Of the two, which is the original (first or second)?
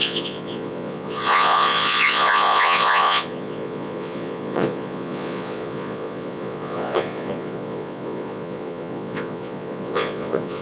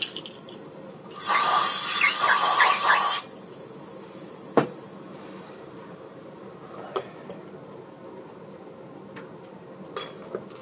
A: second